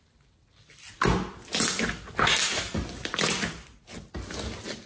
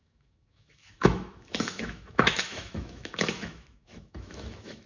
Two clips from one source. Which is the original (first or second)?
first